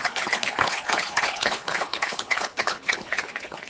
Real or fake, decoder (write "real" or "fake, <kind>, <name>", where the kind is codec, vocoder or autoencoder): fake, codec, HILCodec